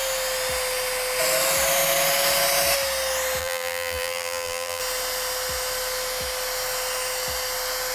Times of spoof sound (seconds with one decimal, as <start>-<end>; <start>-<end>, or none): 3.4-4.8